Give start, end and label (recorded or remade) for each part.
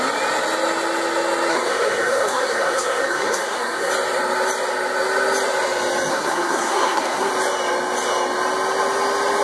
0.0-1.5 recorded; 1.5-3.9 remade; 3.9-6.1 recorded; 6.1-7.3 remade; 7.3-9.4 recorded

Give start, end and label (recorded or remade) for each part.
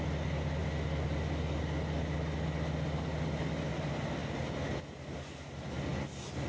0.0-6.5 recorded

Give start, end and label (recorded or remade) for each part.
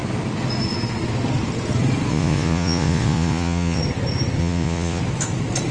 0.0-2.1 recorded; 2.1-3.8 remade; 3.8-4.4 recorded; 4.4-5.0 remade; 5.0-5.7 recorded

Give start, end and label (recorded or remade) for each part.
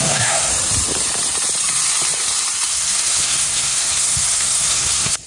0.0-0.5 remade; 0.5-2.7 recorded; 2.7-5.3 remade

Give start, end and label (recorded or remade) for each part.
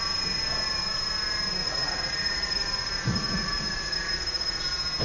0.0-1.6 recorded; 1.6-4.6 remade; 4.6-5.0 recorded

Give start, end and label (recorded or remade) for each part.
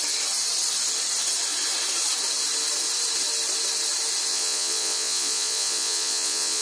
0.0-4.3 recorded; 4.3-6.6 remade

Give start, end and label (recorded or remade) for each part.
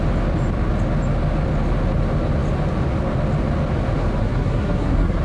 0.0-4.2 recorded; 4.2-5.2 remade